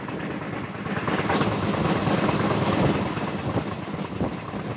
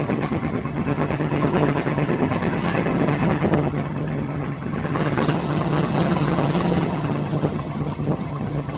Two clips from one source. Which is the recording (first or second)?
first